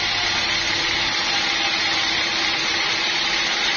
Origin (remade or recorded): recorded